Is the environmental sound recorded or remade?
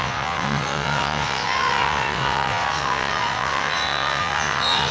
remade